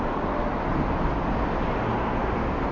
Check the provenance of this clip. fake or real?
real